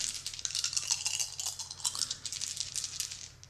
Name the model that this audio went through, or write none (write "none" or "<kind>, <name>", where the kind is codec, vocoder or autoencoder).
none